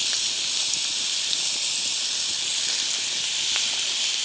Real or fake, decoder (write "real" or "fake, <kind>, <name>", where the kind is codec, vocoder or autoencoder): real